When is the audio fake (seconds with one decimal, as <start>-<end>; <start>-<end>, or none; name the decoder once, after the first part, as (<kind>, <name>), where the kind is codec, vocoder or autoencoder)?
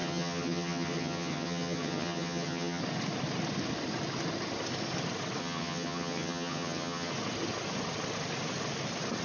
0.0-2.8 (vocoder, HiFi-GAN); 5.4-7.1